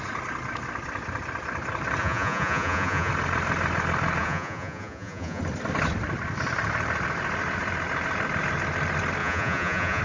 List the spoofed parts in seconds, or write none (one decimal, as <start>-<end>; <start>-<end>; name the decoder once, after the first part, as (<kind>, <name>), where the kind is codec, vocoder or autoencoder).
2.0-3.1 (vocoder, Vocos); 4.2-5.4; 9.2-10.0